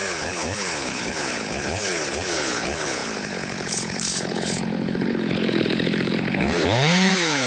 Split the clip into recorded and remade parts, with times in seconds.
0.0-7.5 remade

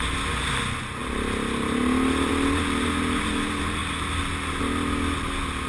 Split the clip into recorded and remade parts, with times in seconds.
0.0-5.7 recorded